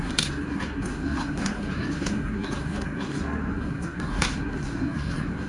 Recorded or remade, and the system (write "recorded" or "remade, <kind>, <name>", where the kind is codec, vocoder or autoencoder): remade, codec, SNAC